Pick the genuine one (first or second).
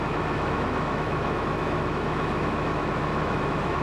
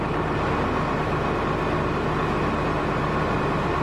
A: second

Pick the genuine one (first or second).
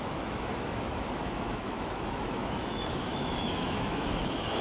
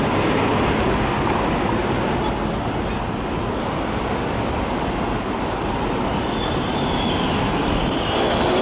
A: second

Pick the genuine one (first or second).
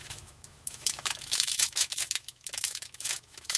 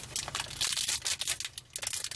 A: second